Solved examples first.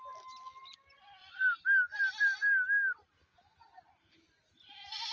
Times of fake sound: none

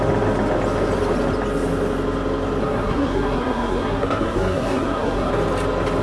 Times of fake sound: 2.6-5.3 (codec, SNAC)

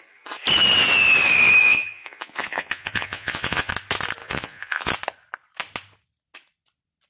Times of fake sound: 1.6-3.7 (vocoder, Vocos); 4.2-4.9

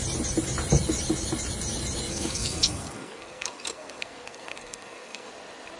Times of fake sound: 2.1-5.3 (codec, SNAC)

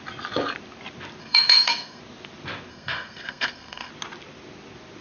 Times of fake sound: 1.2-2.0 (codec, SNAC); 2.7-3.9